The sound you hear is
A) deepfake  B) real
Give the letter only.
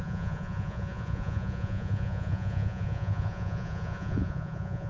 A